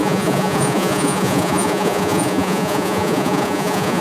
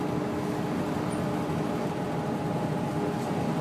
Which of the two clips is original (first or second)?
second